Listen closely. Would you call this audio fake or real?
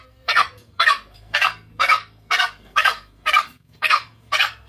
fake